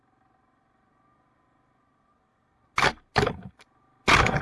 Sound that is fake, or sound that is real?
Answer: real